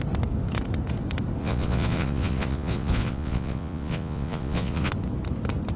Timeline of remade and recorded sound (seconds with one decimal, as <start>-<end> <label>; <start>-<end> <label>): 0.0-1.4 recorded; 1.4-4.9 remade; 4.9-5.8 recorded